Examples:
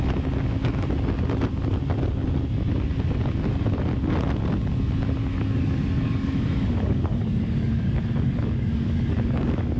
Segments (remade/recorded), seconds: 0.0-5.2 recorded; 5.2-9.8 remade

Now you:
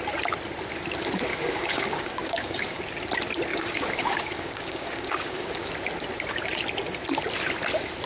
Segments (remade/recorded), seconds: 0.0-1.3 recorded; 1.3-2.8 remade; 2.8-3.5 recorded; 3.5-5.7 remade; 5.7-8.1 recorded

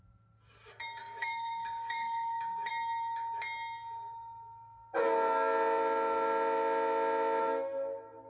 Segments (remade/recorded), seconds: 0.0-1.0 recorded; 1.0-2.7 remade; 2.7-8.3 recorded

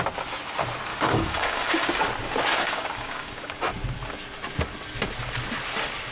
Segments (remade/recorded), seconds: 0.0-0.9 recorded; 0.9-1.9 remade; 1.9-2.5 recorded; 2.5-3.6 remade; 3.6-6.1 recorded